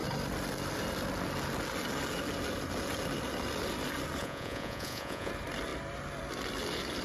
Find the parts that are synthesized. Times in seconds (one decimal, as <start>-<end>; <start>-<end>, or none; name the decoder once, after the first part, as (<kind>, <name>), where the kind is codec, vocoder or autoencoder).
4.2-5.3 (vocoder, Vocos)